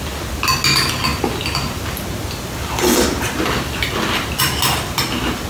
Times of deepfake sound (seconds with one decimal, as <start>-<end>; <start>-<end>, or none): none